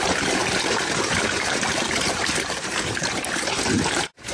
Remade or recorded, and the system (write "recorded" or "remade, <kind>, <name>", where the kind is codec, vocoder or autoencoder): remade, vocoder, BigVGAN v2